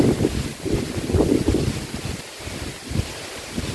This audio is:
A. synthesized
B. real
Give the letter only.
A